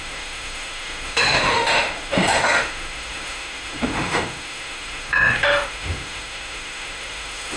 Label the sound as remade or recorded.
remade